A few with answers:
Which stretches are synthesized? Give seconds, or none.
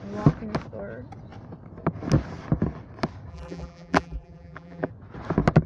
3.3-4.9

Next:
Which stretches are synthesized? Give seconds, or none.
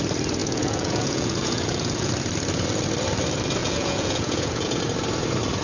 0.4-2.1; 3.6-4.8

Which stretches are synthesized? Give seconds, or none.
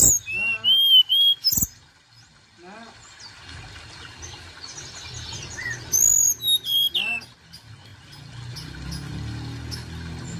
none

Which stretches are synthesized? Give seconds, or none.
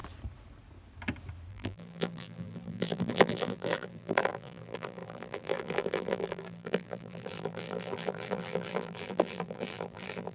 1.5-10.3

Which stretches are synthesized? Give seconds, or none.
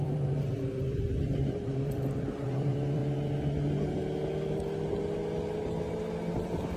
0.0-3.0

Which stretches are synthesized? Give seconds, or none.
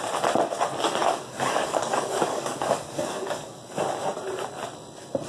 1.0-3.6